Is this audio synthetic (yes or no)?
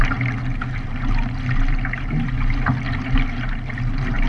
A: no